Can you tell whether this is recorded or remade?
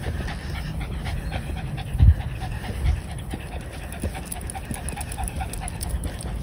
recorded